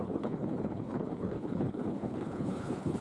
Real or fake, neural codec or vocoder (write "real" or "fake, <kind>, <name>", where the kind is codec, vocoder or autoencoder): fake, codec, HILCodec